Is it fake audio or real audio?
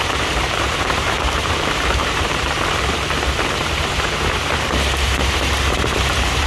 fake